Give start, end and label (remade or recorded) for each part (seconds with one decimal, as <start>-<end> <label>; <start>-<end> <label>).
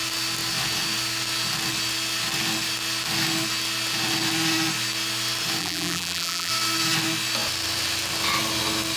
0.0-5.6 recorded; 5.6-6.5 remade; 6.5-9.0 recorded